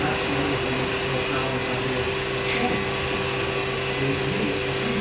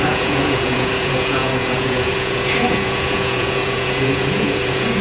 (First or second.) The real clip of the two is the first